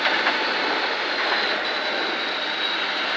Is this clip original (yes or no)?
yes